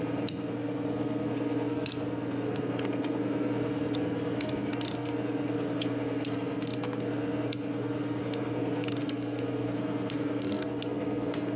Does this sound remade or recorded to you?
remade